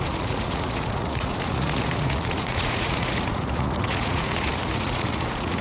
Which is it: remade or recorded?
remade